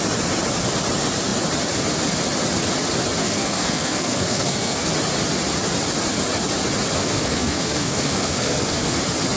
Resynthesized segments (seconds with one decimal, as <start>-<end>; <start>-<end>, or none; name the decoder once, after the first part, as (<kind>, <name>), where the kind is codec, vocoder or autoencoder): 3.2-4.9 (codec, SNAC); 7.0-9.0